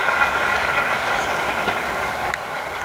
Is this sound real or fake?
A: fake